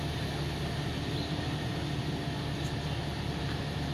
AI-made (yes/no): no